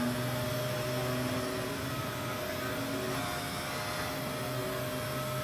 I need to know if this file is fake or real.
real